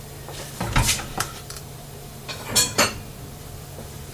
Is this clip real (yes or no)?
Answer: no